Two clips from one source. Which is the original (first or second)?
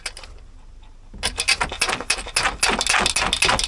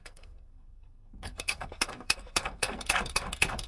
first